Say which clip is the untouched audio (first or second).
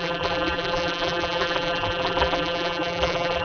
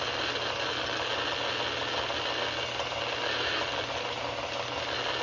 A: second